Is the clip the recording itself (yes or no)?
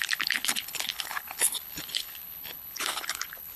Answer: no